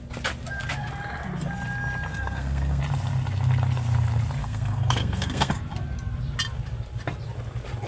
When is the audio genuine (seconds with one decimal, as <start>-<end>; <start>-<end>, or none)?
0.0-2.1; 2.8-4.4; 5.5-7.9